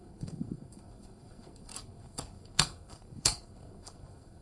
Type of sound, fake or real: fake